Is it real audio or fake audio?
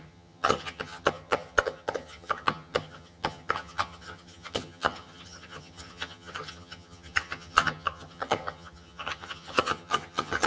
fake